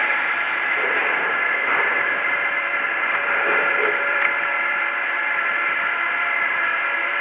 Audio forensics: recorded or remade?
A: remade